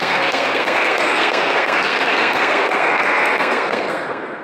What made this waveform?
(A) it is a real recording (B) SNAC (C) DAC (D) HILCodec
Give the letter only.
B